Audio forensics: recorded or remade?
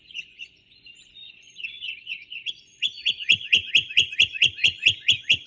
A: remade